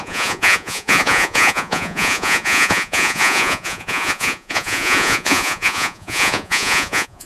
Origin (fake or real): fake